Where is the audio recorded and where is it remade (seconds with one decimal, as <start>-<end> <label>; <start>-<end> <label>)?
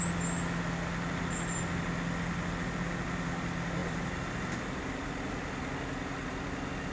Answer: 0.0-3.8 recorded; 3.8-5.5 remade; 5.5-6.9 recorded